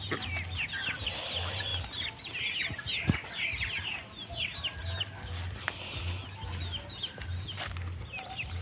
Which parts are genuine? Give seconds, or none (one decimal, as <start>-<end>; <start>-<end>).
0.0-8.6

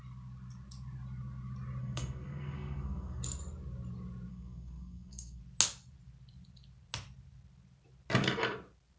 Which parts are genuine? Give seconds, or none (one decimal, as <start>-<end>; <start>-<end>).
0.0-1.8; 3.2-4.3; 5.4-9.0

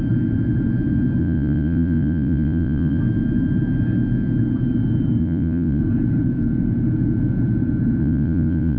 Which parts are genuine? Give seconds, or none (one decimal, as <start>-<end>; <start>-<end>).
0.0-1.2; 3.0-5.2; 5.8-8.0

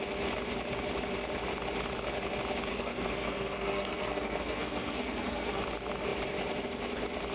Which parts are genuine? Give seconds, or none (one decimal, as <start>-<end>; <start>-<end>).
0.0-2.7; 5.6-7.3

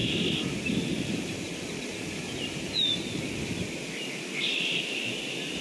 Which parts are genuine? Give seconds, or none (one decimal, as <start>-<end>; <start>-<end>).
0.0-1.1

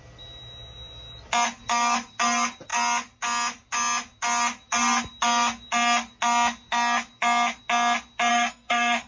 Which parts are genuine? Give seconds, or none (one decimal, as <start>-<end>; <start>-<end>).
0.0-8.3

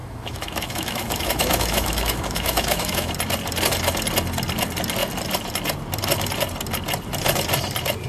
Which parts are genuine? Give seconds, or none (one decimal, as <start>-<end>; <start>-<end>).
3.1-8.1